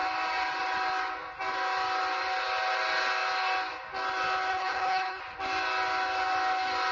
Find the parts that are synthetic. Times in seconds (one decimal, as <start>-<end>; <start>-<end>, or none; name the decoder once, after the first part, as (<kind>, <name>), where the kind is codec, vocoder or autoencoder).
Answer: 4.5-5.2 (codec, HILCodec)